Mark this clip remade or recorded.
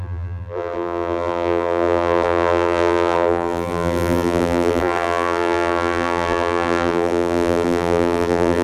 remade